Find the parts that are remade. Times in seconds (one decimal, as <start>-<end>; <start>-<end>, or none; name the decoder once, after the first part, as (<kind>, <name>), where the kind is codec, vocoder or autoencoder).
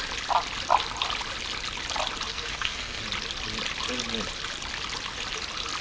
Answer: 2.3-3.0 (codec, SNAC)